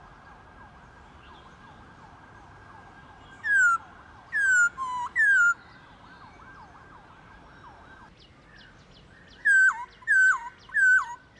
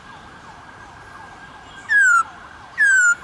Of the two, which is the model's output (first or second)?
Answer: second